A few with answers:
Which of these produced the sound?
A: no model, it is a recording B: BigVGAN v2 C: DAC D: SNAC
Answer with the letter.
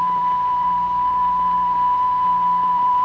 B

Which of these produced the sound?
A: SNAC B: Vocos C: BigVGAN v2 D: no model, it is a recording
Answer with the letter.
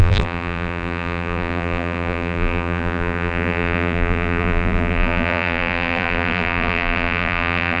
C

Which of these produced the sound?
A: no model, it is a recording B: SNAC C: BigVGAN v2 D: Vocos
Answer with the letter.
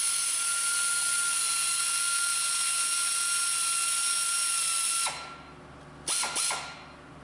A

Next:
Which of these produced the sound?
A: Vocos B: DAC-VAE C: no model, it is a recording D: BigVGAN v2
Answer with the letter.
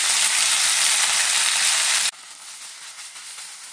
C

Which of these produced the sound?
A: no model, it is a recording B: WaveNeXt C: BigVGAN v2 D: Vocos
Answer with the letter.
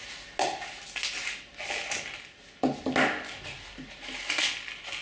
A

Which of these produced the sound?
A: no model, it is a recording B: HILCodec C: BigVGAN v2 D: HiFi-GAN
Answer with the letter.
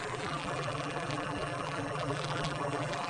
C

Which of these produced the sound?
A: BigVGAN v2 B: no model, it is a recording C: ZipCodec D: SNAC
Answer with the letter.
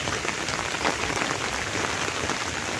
B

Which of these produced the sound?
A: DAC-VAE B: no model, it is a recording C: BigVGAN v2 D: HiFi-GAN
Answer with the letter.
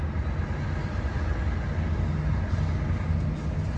B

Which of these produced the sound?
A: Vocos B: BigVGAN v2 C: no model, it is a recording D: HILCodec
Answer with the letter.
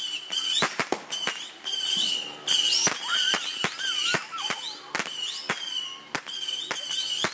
C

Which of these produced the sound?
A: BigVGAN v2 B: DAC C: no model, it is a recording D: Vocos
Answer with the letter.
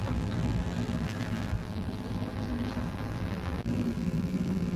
A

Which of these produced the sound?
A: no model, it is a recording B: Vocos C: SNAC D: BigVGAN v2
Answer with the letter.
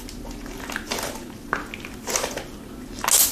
A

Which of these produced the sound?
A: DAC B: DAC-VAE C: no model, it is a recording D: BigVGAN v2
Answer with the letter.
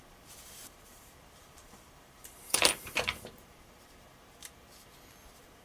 D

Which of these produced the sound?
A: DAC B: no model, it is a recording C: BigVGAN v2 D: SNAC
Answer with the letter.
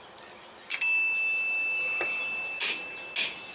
B